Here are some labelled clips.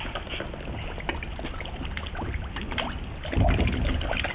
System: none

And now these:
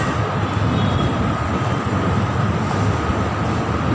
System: none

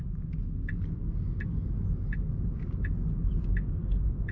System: none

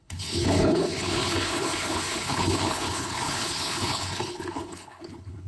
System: codec, HILCodec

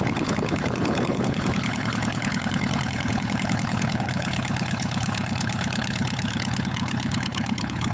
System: codec, HILCodec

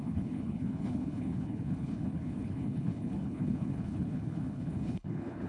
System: codec, HILCodec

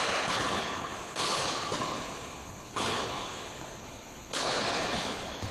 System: codec, HILCodec